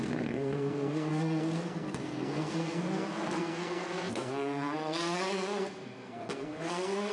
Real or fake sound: fake